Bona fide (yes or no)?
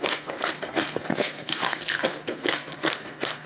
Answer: no